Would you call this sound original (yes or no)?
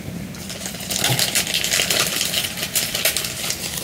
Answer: yes